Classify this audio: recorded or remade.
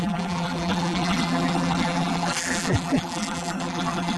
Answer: remade